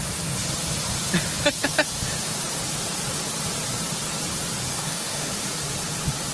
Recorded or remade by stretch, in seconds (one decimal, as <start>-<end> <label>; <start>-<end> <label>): 0.0-4.7 recorded; 4.7-5.3 remade; 5.3-6.3 recorded